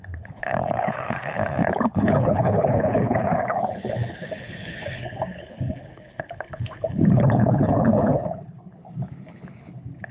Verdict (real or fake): fake